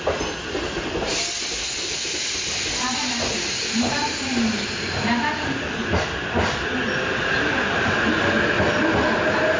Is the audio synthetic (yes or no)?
no